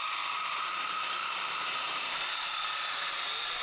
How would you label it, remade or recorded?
recorded